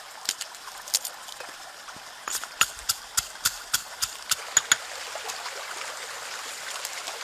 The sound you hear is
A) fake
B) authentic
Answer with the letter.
B